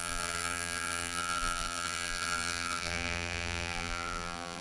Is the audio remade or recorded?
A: remade